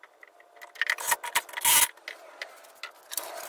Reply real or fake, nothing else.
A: real